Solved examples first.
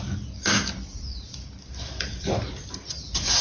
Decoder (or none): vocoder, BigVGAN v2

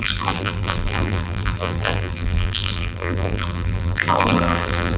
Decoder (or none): vocoder, BigVGAN v2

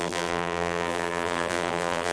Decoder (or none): vocoder, BigVGAN v2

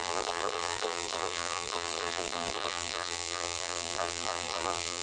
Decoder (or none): vocoder, BigVGAN v2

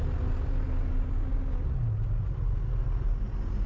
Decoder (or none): none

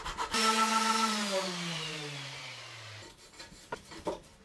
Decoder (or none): vocoder, BigVGAN v2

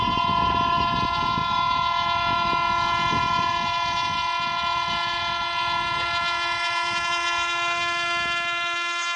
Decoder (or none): vocoder, BigVGAN v2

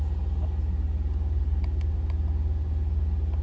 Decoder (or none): none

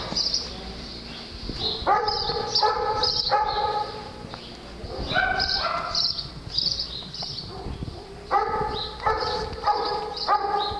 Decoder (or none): vocoder, BigVGAN v2